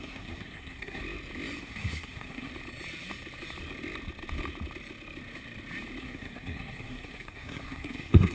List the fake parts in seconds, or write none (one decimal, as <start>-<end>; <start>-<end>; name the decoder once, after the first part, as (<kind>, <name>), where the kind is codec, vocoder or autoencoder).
0.0-1.0 (codec, SNAC); 1.6-2.5; 6.0-8.3